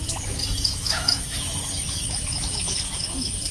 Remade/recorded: remade